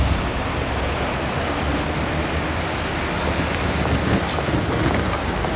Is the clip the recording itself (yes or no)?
yes